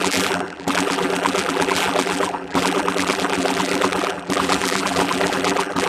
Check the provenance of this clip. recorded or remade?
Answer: remade